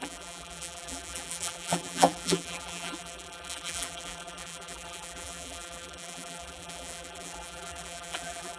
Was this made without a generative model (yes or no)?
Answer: no